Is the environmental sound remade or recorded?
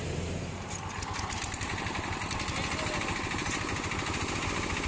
recorded